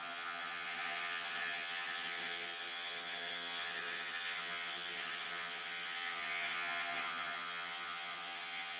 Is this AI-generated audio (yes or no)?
yes